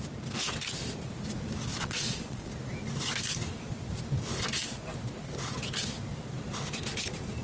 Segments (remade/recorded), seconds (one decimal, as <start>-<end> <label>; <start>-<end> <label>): 0.0-1.7 recorded; 1.7-2.5 remade; 2.5-7.4 recorded